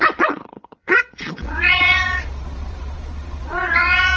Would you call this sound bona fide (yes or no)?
no